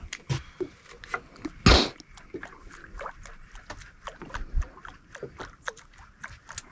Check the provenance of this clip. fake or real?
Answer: real